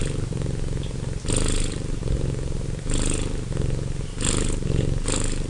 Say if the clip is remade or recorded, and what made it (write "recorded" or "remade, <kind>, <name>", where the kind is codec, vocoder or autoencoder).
recorded